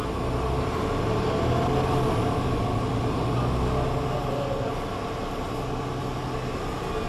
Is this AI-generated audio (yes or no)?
no